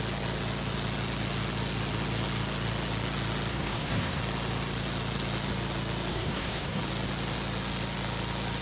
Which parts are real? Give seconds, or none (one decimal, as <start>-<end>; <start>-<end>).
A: 0.0-3.5; 4.2-6.1; 6.8-8.6